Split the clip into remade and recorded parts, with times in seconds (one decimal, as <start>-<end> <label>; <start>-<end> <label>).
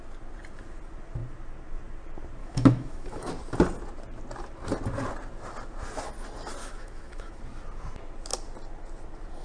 0.0-2.4 recorded; 2.4-3.3 remade; 3.3-6.6 recorded; 6.6-7.4 remade; 7.4-9.4 recorded